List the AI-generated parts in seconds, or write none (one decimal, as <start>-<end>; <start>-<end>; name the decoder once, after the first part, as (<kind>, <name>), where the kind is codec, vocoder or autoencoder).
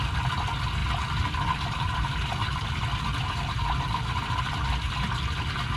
none